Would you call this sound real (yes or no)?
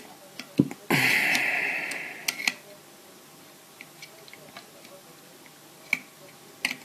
yes